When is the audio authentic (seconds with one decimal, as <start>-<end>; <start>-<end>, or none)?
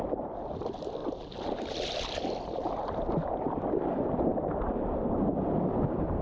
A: 0.0-6.2